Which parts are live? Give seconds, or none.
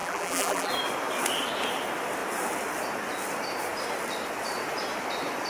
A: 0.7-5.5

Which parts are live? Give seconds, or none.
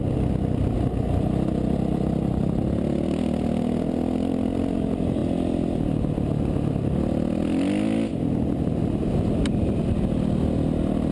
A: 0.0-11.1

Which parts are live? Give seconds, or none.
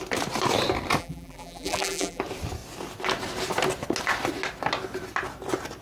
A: 0.0-1.0; 2.2-5.8